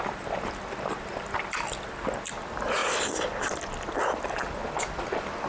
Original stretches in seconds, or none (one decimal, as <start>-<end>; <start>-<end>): 2.8-4.0